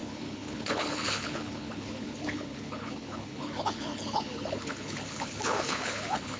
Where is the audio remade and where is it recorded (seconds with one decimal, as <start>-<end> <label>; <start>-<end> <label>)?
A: 0.0-6.4 remade